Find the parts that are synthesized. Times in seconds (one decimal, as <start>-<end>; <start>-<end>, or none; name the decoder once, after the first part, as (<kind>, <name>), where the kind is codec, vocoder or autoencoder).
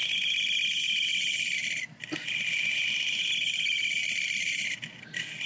none